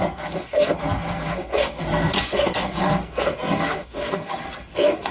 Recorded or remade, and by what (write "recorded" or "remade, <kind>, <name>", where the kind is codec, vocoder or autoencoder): remade, codec, SNAC